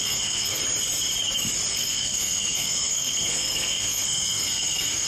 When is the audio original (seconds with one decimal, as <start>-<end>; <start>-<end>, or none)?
0.6-1.7